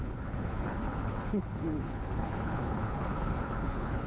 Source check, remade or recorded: remade